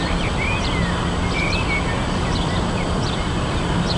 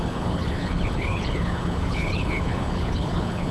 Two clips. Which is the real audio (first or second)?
first